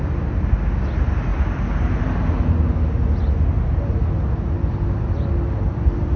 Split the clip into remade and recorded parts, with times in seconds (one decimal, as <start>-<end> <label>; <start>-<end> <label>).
0.0-6.2 recorded